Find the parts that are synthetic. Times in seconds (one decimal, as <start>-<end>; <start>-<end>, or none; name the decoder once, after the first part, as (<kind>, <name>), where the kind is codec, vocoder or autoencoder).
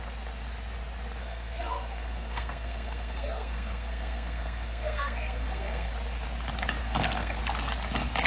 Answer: 1.2-5.9 (codec, SNAC); 6.8-7.4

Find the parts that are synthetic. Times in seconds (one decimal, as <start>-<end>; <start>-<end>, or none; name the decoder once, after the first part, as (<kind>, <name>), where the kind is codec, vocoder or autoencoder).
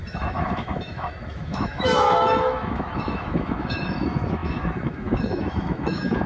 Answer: 0.0-6.3 (autoencoder, DAC-VAE)